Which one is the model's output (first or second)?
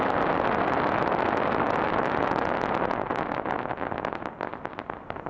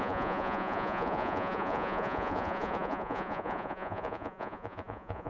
second